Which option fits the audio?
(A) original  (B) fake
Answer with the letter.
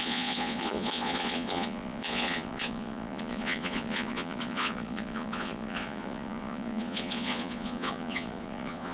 B